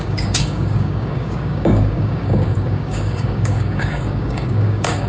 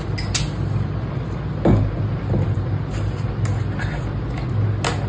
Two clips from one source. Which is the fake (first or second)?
first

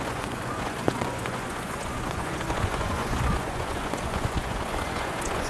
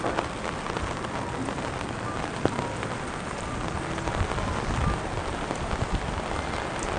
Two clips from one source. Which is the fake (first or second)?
first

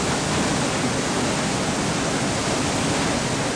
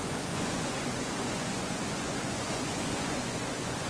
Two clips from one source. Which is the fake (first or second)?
second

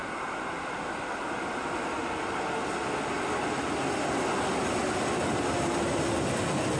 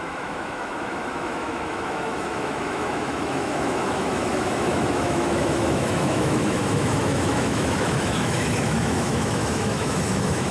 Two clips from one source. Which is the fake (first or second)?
second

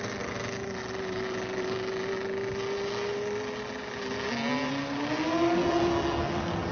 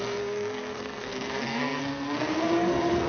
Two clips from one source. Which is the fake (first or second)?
second